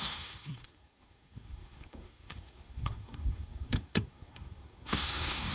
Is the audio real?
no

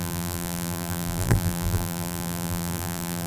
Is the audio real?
no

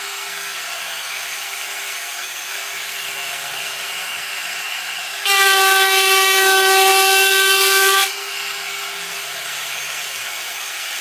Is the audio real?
no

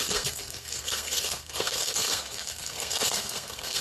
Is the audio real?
no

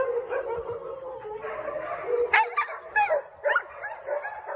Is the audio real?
yes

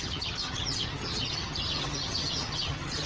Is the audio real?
no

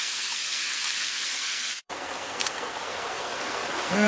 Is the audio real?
no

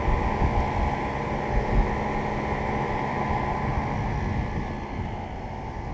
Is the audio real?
yes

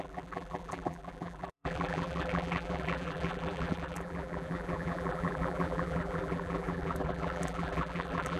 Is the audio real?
no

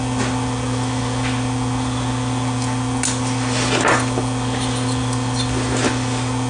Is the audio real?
yes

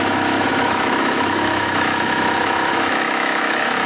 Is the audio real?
no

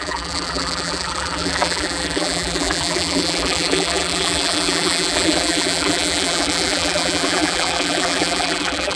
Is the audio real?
no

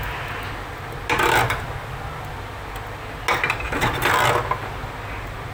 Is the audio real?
yes